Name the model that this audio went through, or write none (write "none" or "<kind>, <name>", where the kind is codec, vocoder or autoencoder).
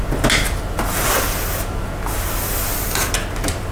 none